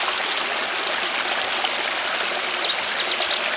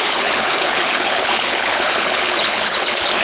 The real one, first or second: first